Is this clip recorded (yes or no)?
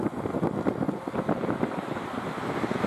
yes